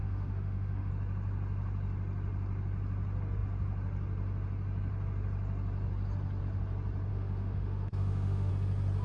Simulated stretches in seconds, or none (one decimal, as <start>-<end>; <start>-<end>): 0.0-0.9; 7.1-8.5